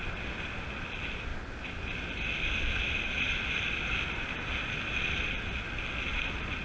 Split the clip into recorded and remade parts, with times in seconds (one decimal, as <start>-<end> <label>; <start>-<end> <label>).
0.0-6.6 recorded

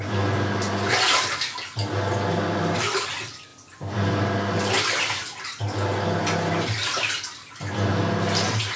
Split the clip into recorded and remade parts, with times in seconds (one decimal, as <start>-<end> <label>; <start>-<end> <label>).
0.0-8.8 recorded

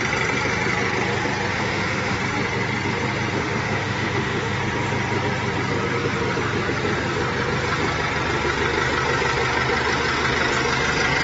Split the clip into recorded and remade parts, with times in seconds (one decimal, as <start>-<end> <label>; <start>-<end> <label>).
0.0-1.5 recorded; 1.5-2.2 remade; 2.2-3.4 recorded; 3.4-4.6 remade; 4.6-11.2 recorded

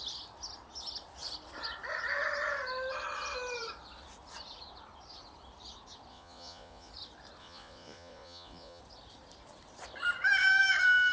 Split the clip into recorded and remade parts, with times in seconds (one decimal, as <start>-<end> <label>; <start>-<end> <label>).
0.0-6.1 recorded; 6.1-6.9 remade; 6.9-7.4 recorded; 7.4-8.8 remade; 8.8-11.1 recorded

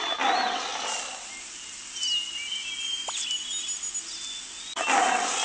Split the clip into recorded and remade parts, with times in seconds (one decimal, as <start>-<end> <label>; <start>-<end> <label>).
0.0-5.4 recorded

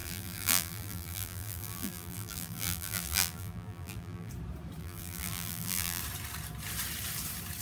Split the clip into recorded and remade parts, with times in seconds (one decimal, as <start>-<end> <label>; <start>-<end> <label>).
0.0-4.3 remade; 4.3-4.8 recorded; 4.8-6.0 remade; 6.0-7.6 recorded